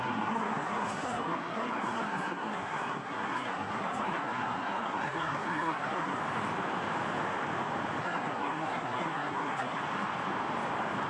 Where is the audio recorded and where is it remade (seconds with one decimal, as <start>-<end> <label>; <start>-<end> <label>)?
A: 0.0-6.2 remade; 6.2-8.0 recorded; 8.0-9.8 remade; 9.8-11.1 recorded